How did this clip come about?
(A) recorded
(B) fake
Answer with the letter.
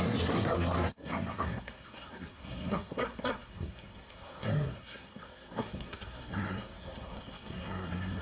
B